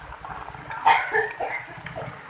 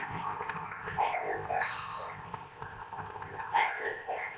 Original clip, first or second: first